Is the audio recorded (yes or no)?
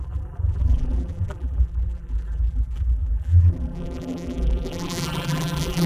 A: no